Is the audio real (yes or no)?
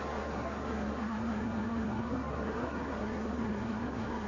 no